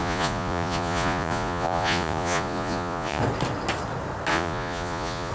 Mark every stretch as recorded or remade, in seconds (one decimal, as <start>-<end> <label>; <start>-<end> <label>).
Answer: 0.0-3.2 remade; 3.2-4.3 recorded; 4.3-5.3 remade